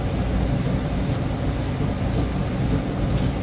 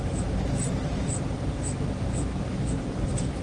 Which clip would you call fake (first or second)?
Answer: second